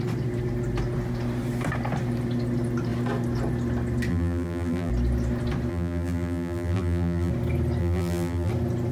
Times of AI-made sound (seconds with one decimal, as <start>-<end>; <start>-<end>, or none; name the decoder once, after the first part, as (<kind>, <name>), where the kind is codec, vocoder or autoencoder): 4.1-4.9 (vocoder, BigVGAN v2); 5.7-7.3; 7.8-8.5